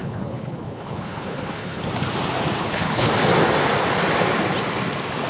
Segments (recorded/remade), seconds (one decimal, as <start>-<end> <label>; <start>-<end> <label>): 0.0-1.8 remade; 1.8-2.6 recorded; 2.6-3.1 remade; 3.1-5.3 recorded